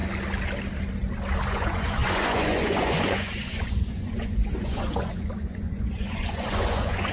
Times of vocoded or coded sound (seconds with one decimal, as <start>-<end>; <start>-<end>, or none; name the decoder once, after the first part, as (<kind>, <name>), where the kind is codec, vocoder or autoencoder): 1.5-7.1 (vocoder, Vocos)